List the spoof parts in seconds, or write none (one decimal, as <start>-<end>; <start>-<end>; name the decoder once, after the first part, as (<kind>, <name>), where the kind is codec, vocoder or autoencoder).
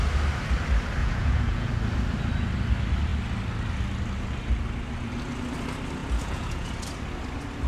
1.0-1.7 (vocoder, Vocos); 6.0-6.7